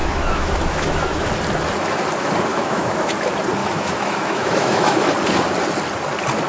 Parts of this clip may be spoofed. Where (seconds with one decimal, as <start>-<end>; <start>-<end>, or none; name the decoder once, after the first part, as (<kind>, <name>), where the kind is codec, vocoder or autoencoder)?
0.0-1.3 (autoencoder, DAC-VAE); 2.5-3.1; 3.6-5.1